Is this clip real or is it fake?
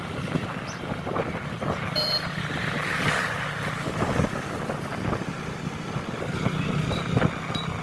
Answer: real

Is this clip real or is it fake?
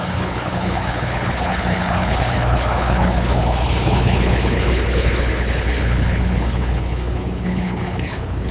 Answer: fake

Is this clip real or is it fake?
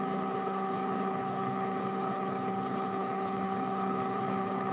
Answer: fake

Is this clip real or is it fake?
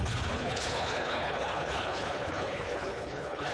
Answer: fake